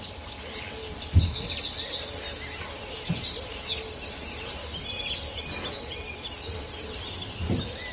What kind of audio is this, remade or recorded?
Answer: recorded